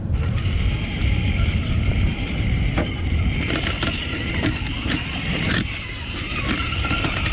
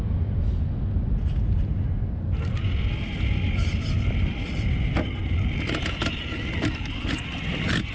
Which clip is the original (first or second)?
second